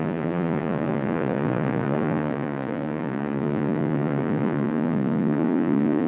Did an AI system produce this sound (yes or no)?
yes